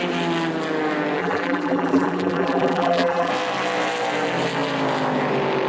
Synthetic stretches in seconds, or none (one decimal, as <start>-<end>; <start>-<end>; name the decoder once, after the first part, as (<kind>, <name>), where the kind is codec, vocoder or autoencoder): 1.2-3.3 (vocoder, BigVGAN v2)